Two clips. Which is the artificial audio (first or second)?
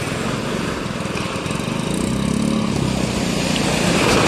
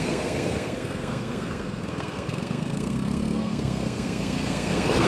second